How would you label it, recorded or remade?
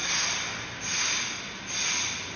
recorded